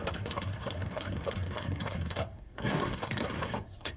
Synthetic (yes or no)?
yes